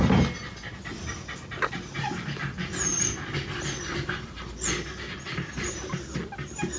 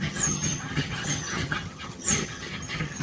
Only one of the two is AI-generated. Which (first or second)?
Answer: second